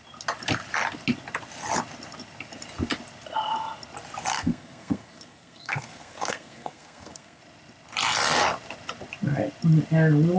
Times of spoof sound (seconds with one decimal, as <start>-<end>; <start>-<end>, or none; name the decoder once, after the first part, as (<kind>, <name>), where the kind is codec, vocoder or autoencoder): 4.3-7.4 (codec, SNAC)